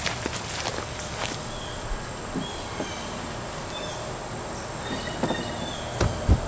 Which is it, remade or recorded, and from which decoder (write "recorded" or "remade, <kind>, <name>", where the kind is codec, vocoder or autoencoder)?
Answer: recorded